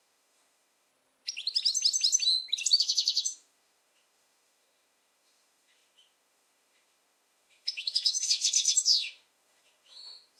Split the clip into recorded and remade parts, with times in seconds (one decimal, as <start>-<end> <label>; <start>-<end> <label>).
0.0-0.9 remade; 0.9-2.8 recorded; 2.8-10.4 remade